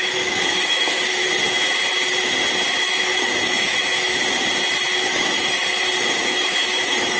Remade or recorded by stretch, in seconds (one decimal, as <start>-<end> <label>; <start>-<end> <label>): 0.0-1.2 remade; 1.2-2.8 recorded; 2.8-3.9 remade; 3.9-5.1 recorded; 5.1-5.6 remade; 5.6-6.2 recorded; 6.2-7.2 remade